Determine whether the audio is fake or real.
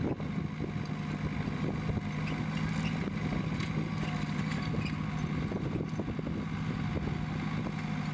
real